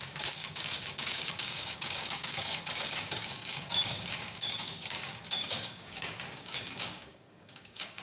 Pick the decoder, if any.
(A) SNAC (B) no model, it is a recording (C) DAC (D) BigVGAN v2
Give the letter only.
C